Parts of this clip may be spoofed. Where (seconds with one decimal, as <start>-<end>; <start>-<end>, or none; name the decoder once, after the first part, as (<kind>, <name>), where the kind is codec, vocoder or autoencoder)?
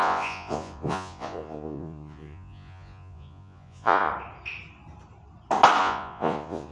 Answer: 0.0-4.1 (vocoder, Vocos); 5.8-6.7